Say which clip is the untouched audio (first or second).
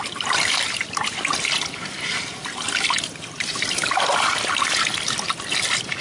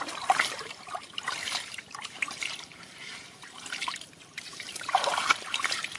first